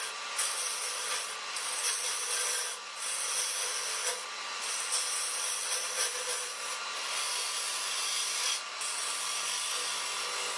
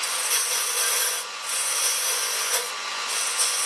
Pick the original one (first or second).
first